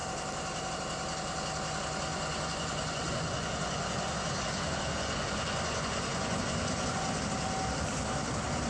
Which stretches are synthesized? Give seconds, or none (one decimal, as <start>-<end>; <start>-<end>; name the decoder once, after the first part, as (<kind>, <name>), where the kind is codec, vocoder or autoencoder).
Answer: 2.1-7.2 (vocoder, Vocos)